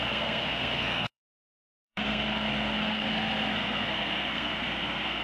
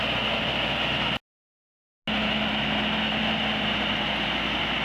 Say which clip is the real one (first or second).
second